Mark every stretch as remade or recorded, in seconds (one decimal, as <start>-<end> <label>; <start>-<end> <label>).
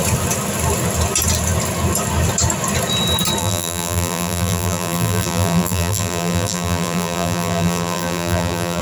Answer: 0.0-3.4 recorded; 3.4-8.8 remade